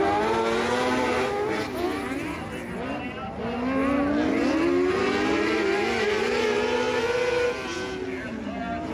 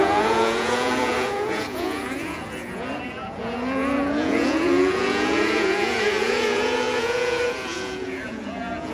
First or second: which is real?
first